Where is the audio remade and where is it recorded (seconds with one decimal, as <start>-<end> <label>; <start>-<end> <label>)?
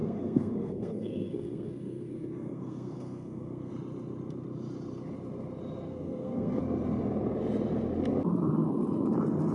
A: 0.0-3.7 remade; 3.7-5.9 recorded; 5.9-6.6 remade; 6.6-9.5 recorded